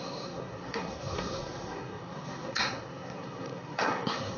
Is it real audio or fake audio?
fake